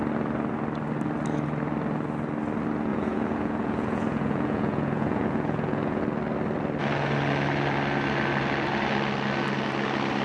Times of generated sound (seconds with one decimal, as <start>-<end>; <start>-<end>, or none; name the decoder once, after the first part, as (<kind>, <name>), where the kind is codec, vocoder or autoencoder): 2.9-6.0 (vocoder, Vocos)